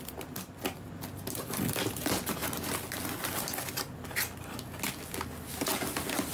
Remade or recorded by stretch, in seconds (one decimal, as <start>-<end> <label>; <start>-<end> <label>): 0.0-6.3 recorded